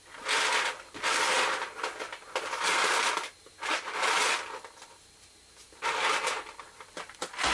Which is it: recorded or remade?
recorded